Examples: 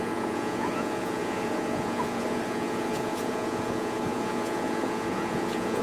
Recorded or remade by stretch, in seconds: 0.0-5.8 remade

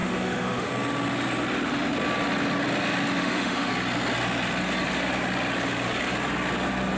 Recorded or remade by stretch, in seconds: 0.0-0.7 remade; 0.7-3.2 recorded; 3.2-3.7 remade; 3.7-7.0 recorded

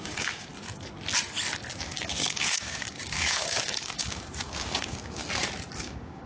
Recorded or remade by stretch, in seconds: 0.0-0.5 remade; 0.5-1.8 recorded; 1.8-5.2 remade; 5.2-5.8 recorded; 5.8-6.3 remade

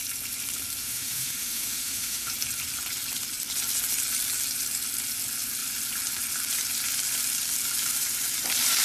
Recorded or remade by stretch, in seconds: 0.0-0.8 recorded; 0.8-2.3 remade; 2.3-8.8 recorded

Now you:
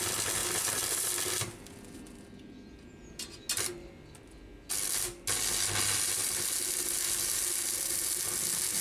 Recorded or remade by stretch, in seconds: 0.0-0.4 recorded; 0.4-1.1 remade; 1.1-8.8 recorded

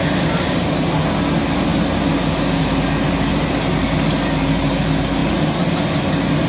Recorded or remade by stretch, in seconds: 0.0-6.5 recorded